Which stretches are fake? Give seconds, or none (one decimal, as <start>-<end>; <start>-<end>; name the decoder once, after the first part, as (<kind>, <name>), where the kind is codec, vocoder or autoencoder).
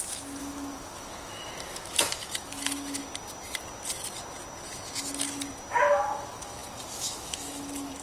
0.0-3.0 (autoencoder, DAC-VAE); 5.9-8.0